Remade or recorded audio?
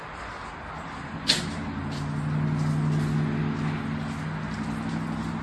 recorded